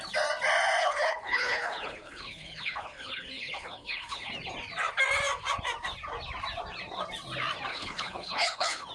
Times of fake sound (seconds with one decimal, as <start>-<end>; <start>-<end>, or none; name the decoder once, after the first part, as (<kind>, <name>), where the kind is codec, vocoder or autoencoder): 0.8-4.3 (codec, HILCodec); 7.7-8.9